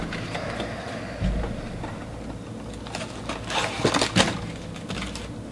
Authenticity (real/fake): real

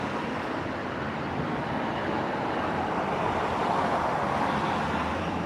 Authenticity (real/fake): fake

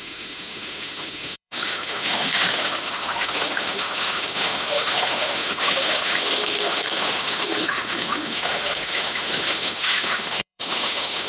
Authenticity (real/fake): fake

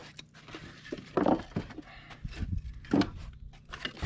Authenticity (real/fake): real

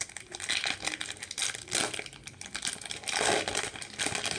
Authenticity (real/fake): real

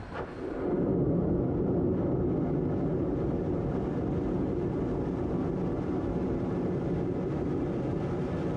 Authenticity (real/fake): real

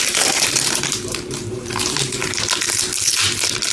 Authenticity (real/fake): fake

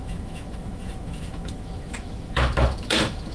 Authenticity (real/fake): fake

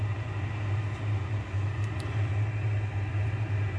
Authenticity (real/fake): real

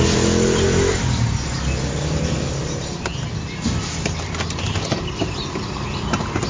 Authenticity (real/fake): real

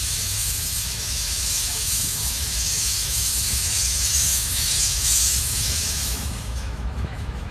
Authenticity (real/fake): fake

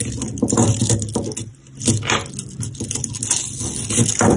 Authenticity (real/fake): real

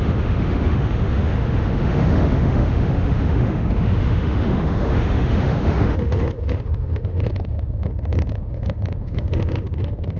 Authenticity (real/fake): fake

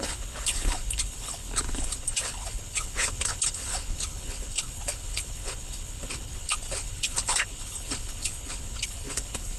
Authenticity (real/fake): fake